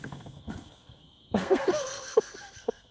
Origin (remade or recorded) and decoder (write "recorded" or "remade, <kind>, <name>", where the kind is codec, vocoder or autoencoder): remade, codec, SNAC